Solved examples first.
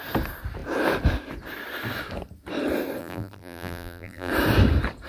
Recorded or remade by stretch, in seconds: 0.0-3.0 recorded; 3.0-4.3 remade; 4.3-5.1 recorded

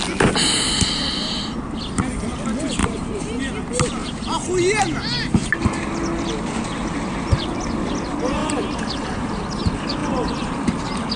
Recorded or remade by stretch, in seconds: 0.0-2.8 recorded; 2.8-3.4 remade; 3.4-4.0 recorded; 4.0-5.2 remade; 5.2-8.4 recorded; 8.4-9.3 remade; 9.3-11.2 recorded

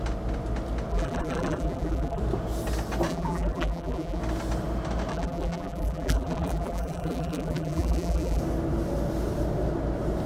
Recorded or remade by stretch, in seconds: 0.0-0.9 recorded; 0.9-2.2 remade; 2.2-3.1 recorded; 3.1-4.2 remade; 4.2-5.1 recorded; 5.1-8.4 remade; 8.4-10.3 recorded